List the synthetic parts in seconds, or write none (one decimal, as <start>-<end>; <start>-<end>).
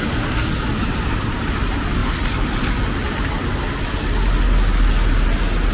none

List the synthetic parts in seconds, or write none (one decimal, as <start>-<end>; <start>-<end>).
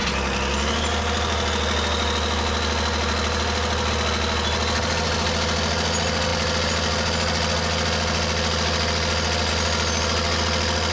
none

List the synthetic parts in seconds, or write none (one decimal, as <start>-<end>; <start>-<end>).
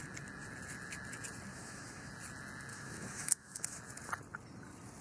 1.5-2.1; 2.7-3.8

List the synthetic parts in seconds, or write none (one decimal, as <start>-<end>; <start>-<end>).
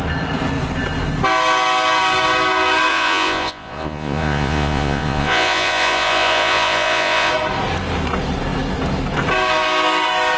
2.9-7.3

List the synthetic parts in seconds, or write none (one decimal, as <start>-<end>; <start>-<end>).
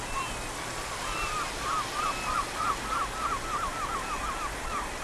none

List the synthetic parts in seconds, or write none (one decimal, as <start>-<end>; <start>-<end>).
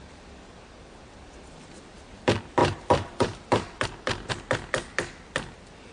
2.6-4.3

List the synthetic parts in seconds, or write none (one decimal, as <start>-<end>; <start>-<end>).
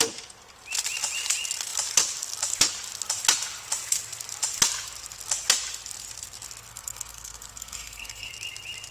6.7-8.3